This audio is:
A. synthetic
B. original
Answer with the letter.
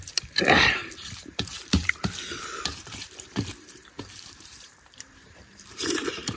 A